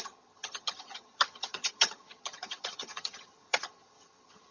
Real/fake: fake